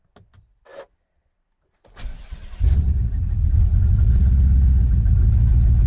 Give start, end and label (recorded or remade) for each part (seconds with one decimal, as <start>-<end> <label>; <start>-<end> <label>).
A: 0.0-5.9 recorded